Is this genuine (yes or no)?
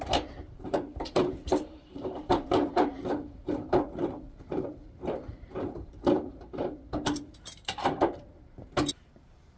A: no